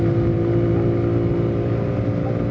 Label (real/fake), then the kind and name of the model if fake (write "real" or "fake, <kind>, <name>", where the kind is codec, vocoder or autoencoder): real